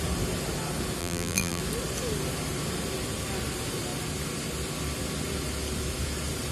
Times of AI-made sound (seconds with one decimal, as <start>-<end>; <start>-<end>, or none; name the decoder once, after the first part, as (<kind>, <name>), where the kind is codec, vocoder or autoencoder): 1.0-1.6 (vocoder, BigVGAN v2)

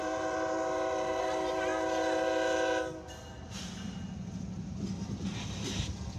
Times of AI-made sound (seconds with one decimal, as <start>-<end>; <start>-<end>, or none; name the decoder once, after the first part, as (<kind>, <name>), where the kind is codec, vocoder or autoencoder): 0.0-1.7 (vocoder, BigVGAN v2); 5.0-6.2